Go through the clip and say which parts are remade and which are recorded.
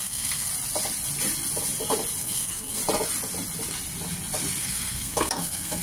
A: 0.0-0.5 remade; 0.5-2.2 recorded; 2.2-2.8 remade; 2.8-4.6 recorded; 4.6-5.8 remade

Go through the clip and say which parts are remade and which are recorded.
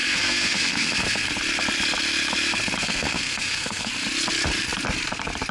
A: 0.0-1.3 remade; 1.3-2.8 recorded; 2.8-3.9 remade; 3.9-5.5 recorded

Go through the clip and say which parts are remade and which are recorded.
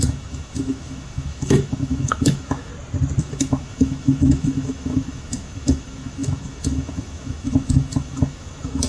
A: 0.0-2.7 remade; 2.7-3.2 recorded; 3.2-8.9 remade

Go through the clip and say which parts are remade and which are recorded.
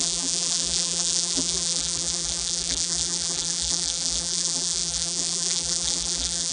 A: 0.0-6.5 remade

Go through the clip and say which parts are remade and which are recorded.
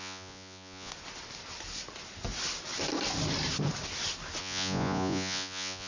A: 0.0-0.9 remade; 0.9-4.4 recorded; 4.4-5.9 remade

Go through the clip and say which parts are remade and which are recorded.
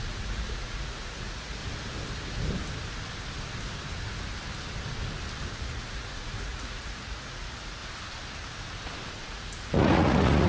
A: 0.0-1.6 remade; 1.6-5.5 recorded; 5.5-7.8 remade; 7.8-9.1 recorded; 9.1-10.5 remade